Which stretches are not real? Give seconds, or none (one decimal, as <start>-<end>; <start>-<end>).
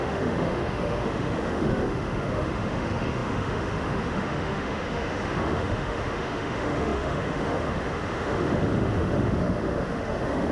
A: 0.0-10.5